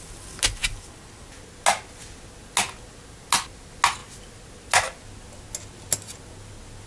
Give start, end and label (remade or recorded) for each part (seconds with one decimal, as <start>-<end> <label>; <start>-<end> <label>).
0.0-6.9 recorded